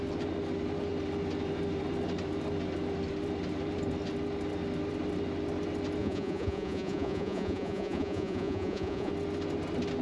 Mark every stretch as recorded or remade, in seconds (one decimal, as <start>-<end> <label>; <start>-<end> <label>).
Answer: 0.0-6.0 recorded; 6.0-9.1 remade; 9.1-10.0 recorded